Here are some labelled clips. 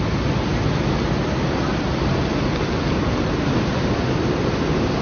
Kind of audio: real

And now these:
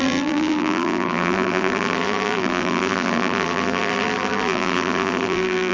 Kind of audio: fake